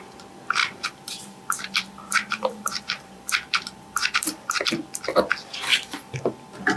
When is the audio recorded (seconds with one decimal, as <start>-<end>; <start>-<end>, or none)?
0.0-0.6; 4.7-5.7; 6.2-6.8